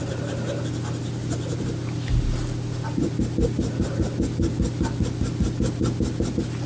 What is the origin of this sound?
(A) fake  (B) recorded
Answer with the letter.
B